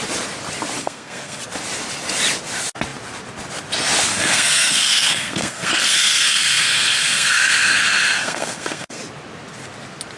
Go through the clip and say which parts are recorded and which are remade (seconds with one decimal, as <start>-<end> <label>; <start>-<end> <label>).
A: 0.0-0.8 recorded; 0.8-1.4 remade; 1.4-4.1 recorded; 4.1-9.0 remade; 9.0-10.2 recorded